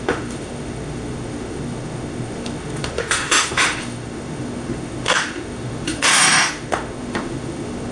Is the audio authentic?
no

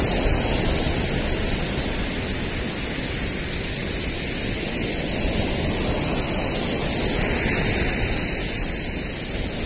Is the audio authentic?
yes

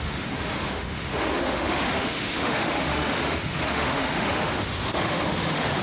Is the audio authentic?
no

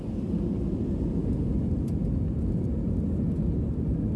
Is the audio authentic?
yes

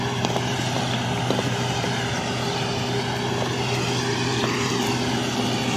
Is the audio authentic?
yes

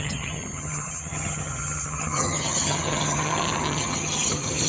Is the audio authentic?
no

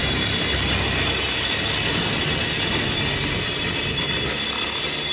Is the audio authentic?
yes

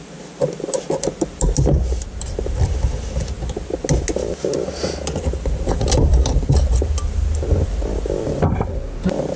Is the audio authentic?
yes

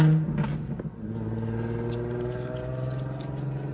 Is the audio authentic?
yes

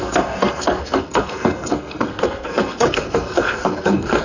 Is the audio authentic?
no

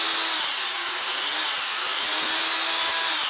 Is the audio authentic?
yes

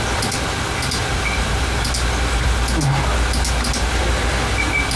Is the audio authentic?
yes